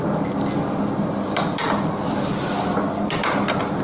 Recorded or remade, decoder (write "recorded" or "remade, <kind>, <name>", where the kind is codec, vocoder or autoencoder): recorded